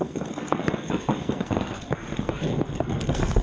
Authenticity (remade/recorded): remade